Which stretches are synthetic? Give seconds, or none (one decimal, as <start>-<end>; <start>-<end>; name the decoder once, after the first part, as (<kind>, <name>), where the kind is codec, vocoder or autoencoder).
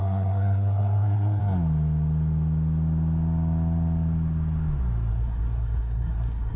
0.0-1.4 (codec, SNAC); 5.1-6.6